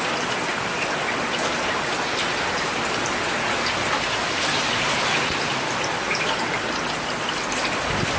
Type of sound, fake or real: real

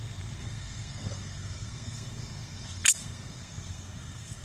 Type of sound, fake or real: fake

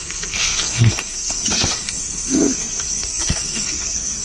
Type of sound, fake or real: fake